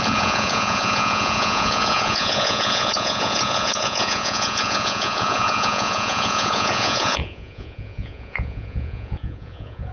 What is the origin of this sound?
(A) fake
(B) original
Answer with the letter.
A